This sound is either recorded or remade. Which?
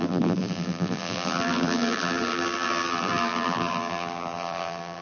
remade